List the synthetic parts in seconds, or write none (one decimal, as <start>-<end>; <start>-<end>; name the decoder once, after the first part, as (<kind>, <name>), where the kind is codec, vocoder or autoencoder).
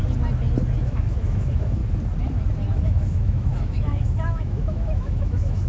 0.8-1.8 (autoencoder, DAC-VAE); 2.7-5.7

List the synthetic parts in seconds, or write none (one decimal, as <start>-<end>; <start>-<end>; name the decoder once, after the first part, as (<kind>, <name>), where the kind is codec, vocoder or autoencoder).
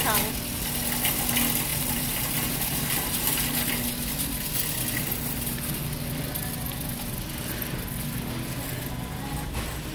1.7-2.9 (vocoder, BigVGAN v2)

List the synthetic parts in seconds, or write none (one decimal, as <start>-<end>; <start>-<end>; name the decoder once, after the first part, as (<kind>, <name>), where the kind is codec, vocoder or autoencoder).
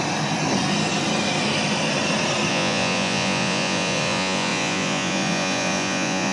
2.5-6.3 (vocoder, Vocos)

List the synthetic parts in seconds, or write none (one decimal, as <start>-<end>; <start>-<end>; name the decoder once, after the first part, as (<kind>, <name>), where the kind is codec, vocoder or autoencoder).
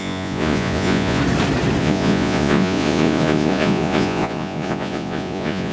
0.0-1.2 (vocoder, Vocos); 1.8-5.7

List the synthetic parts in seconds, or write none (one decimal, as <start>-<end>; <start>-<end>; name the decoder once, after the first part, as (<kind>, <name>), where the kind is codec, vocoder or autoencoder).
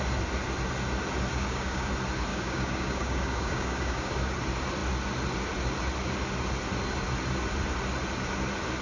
1.3-1.9 (codec, DAC); 2.3-4.3